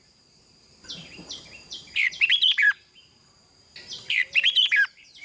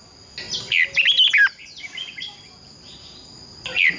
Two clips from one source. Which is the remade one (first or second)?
first